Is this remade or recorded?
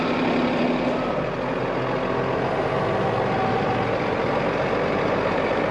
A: recorded